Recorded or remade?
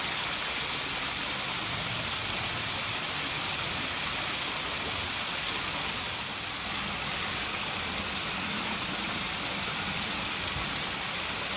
recorded